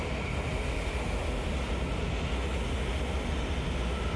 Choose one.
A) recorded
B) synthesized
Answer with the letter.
A